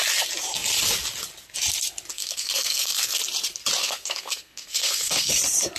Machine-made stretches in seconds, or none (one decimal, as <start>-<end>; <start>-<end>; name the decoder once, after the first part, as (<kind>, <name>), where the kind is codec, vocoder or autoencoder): 2.1-3.2 (codec, SNAC); 3.8-5.3